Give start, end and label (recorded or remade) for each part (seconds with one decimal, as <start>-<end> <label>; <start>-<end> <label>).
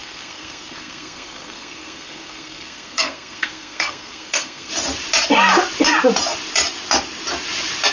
0.0-4.7 remade; 4.7-7.9 recorded